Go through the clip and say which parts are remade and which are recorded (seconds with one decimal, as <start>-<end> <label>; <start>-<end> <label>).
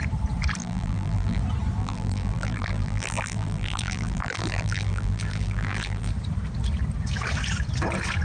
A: 0.0-0.6 recorded; 0.6-1.4 remade; 1.4-1.8 recorded; 1.8-6.1 remade; 6.1-8.2 recorded